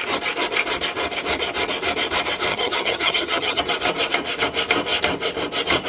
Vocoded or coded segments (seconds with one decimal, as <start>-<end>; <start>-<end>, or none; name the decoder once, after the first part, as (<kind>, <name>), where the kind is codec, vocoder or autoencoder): 2.5-3.6 (vocoder, HiFi-GAN)